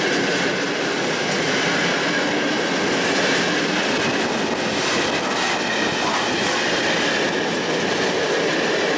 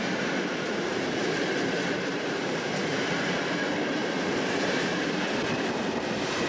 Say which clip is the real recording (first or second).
first